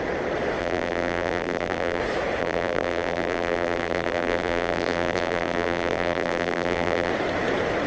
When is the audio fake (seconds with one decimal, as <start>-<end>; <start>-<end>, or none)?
0.6-2.0; 2.4-7.1